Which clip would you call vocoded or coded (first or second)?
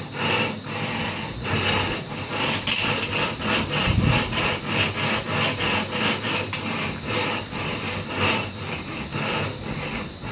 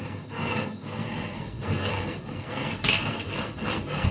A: second